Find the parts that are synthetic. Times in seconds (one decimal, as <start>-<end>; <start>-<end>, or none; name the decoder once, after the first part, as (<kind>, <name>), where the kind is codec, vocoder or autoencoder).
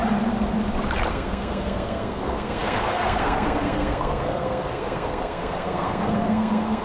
1.1-6.8 (codec, SNAC)